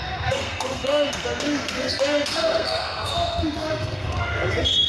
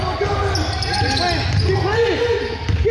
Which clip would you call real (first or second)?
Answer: second